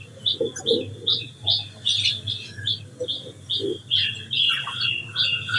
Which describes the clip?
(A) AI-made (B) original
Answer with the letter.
B